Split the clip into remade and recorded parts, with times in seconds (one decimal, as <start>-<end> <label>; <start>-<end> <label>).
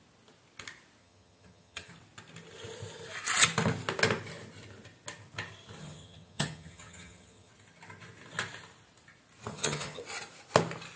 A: 0.0-1.0 recorded; 1.0-1.9 remade; 1.9-5.8 recorded; 5.8-7.5 remade; 7.5-9.5 recorded; 9.5-10.0 remade; 10.0-11.0 recorded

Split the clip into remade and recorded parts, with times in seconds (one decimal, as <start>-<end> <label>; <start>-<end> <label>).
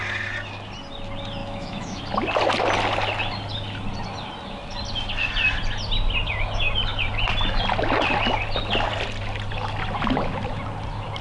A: 0.0-1.4 recorded; 1.4-2.0 remade; 2.0-11.2 recorded